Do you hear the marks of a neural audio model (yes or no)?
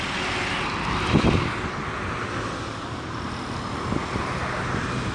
no